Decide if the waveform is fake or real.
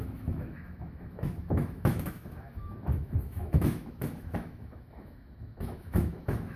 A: fake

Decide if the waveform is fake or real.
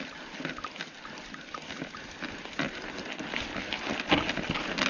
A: real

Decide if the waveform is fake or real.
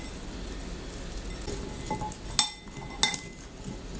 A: real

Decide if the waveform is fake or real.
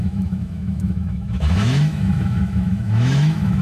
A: fake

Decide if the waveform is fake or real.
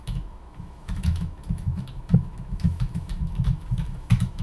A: fake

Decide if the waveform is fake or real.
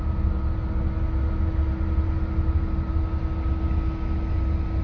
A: real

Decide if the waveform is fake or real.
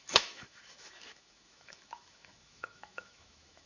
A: fake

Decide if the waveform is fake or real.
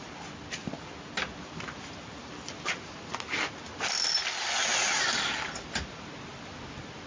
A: real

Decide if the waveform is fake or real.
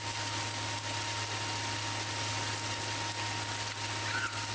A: real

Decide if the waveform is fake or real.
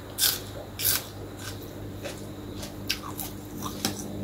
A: real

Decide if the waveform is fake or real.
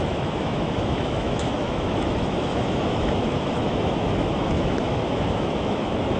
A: fake